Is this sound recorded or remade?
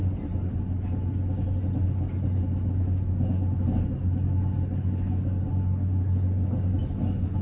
recorded